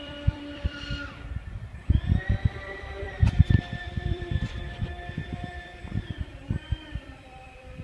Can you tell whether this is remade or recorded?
remade